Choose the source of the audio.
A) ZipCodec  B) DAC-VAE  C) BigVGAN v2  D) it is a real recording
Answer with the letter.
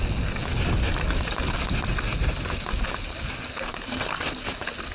D